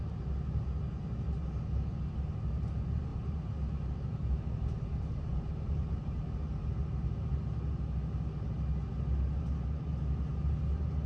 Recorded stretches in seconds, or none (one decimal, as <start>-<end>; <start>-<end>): 0.0-3.1; 6.2-11.1